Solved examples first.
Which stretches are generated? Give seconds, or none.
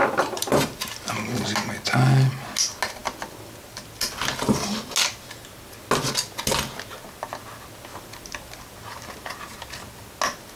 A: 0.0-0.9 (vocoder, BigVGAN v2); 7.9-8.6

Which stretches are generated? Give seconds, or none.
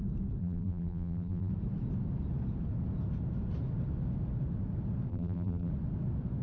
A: 0.4-1.5 (vocoder, BigVGAN v2); 5.1-5.7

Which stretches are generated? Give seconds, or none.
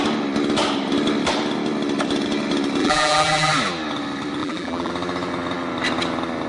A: 2.8-3.5 (vocoder, BigVGAN v2); 4.4-4.9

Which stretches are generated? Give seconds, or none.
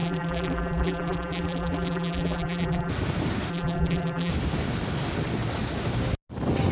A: 0.0-2.9 (vocoder, BigVGAN v2); 3.5-4.3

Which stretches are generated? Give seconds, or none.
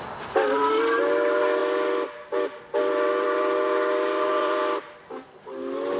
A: 4.3-4.8 (vocoder, BigVGAN v2)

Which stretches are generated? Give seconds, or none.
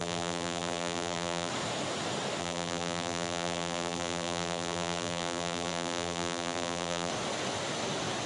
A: 0.0-1.5 (vocoder, BigVGAN v2); 2.4-7.1